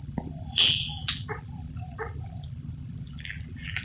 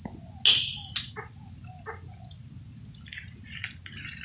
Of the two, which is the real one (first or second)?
second